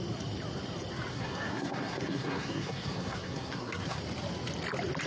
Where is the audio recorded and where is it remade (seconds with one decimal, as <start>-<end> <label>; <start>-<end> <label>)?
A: 0.0-1.1 recorded; 1.1-4.0 remade; 4.0-5.1 recorded